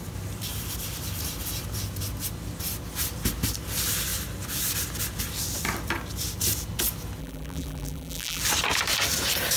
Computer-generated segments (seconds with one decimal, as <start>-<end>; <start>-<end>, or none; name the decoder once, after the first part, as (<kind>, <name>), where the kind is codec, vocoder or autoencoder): 7.2-8.4 (vocoder, BigVGAN v2)